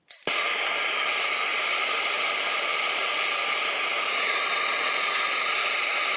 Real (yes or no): yes